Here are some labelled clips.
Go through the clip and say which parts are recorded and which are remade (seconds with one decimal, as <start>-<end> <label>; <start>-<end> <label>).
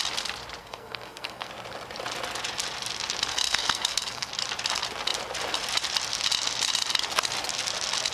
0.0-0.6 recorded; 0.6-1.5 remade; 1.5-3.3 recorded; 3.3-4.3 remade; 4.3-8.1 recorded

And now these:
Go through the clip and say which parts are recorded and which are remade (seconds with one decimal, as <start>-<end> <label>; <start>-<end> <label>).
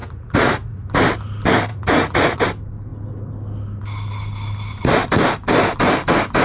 0.0-0.9 remade; 0.9-1.7 recorded; 1.7-2.4 remade; 2.4-6.4 recorded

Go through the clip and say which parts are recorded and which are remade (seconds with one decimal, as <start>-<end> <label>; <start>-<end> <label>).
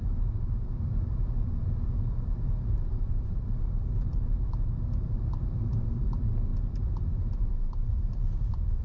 0.0-6.5 remade; 6.5-7.2 recorded; 7.2-8.8 remade